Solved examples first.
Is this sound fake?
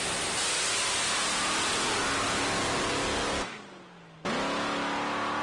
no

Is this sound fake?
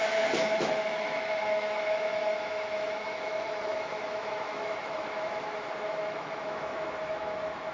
yes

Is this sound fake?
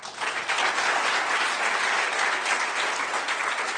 no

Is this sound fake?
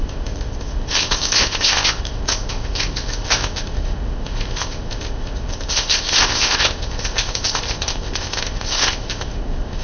yes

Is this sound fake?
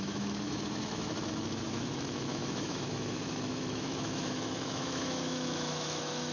yes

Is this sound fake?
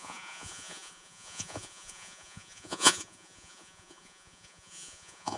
yes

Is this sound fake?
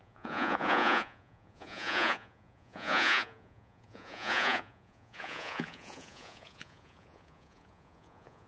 yes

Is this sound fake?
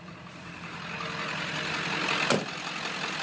no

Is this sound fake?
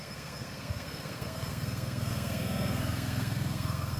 yes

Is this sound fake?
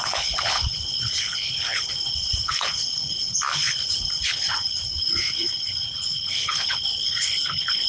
yes